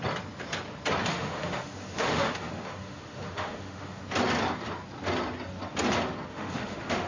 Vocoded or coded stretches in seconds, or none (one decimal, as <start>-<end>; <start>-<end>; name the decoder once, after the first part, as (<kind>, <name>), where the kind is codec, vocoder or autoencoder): 1.1-4.0 (autoencoder, DAC-VAE); 6.3-7.1